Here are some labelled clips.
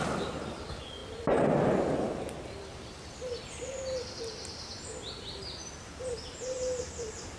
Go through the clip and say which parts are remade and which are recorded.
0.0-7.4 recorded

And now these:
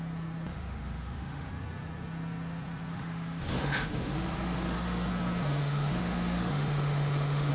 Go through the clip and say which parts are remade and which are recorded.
0.0-0.5 recorded; 0.5-1.5 remade; 1.5-2.9 recorded; 2.9-5.1 remade; 5.1-5.6 recorded; 5.6-7.5 remade

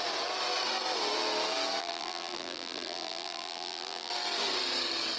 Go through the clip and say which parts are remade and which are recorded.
0.0-1.8 recorded; 1.8-4.1 remade; 4.1-5.2 recorded

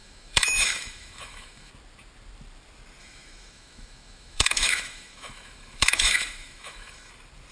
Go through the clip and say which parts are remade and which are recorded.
0.0-1.7 remade; 1.7-3.0 recorded; 3.0-7.1 remade; 7.1-7.5 recorded

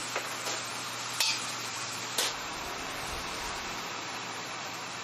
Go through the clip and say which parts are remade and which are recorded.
0.0-0.7 recorded; 0.7-5.0 remade

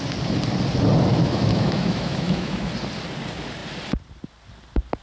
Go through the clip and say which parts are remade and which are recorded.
0.0-1.1 recorded; 1.1-2.7 remade; 2.7-5.0 recorded